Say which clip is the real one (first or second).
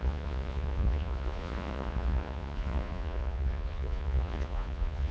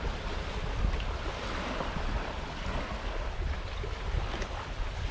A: second